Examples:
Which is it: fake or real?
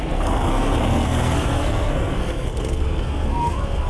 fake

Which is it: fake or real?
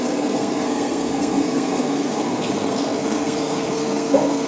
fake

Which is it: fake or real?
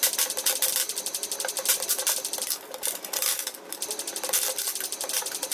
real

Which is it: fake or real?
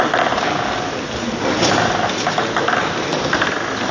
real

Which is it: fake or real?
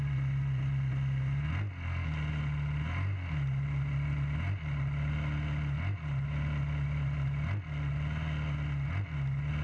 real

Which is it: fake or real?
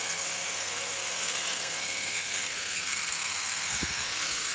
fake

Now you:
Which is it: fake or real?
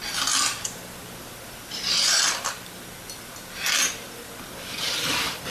real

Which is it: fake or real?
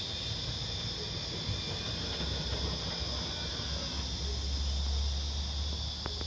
real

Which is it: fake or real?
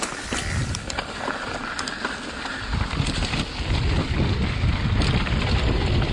real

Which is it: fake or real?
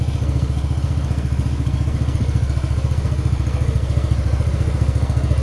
fake